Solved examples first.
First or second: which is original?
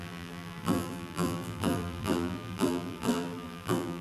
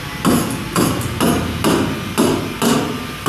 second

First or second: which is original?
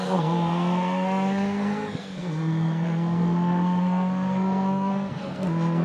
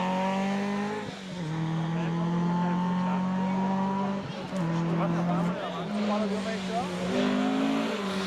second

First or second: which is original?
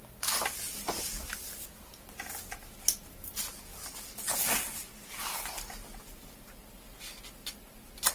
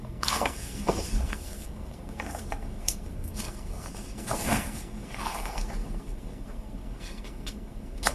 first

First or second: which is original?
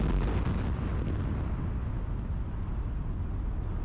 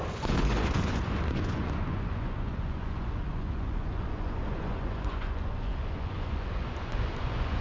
first